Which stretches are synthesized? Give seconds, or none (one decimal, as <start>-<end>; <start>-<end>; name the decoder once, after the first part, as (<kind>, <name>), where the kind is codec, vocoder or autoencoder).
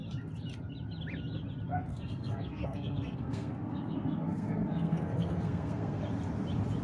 1.9-6.0 (codec, SNAC)